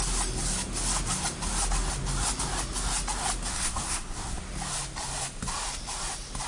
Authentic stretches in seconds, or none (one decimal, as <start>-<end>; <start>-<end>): 0.0-3.5; 4.4-6.5